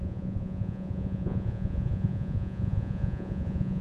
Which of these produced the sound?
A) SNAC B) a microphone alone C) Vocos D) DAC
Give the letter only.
C